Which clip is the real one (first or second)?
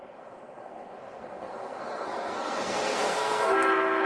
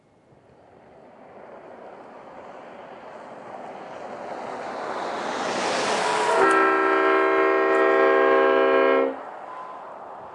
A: second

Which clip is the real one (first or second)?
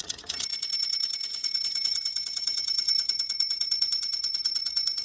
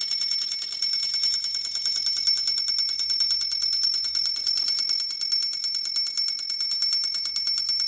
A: second